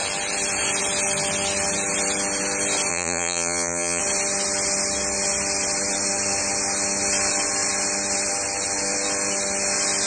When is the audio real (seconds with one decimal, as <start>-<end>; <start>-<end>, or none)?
0.0-2.9; 4.0-10.1